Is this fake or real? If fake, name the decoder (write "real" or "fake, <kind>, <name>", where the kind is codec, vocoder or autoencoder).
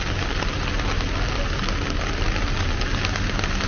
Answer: real